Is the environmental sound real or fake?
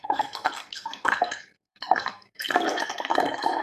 fake